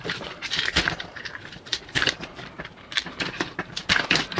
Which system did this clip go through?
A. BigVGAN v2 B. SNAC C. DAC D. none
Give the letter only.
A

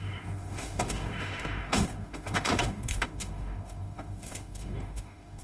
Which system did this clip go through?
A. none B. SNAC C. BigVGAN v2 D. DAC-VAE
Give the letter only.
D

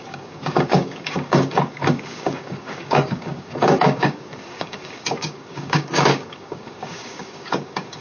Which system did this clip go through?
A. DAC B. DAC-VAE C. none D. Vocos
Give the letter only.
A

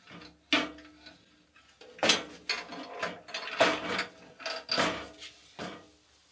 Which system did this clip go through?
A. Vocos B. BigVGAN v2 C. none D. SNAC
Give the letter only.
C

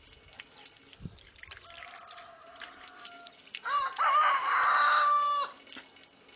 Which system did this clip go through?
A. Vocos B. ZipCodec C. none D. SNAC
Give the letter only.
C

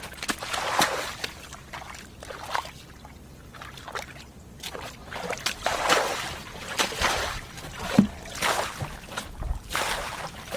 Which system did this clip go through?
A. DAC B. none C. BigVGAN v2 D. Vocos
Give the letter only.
B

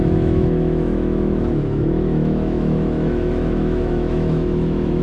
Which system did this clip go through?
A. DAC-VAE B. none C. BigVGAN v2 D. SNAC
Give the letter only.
A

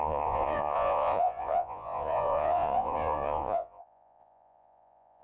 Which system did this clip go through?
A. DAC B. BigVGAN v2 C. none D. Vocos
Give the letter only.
D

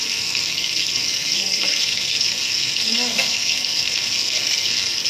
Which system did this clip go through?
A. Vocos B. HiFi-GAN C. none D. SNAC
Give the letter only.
D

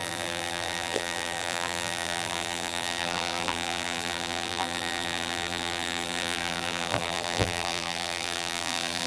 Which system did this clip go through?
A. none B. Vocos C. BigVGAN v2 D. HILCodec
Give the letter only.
C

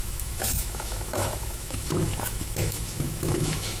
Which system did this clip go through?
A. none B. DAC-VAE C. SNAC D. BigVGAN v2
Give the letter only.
B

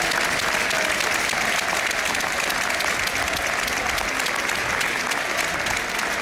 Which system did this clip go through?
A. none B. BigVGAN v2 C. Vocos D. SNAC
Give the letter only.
A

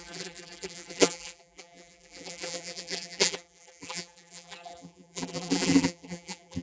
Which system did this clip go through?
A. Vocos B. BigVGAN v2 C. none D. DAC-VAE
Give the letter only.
B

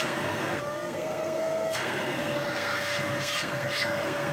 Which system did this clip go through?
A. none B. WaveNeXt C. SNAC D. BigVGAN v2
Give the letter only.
C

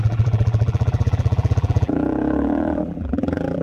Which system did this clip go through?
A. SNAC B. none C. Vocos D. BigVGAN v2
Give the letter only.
D